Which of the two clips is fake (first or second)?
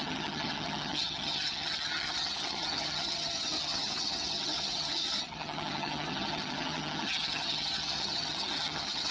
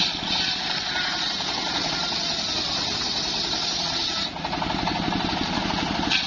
first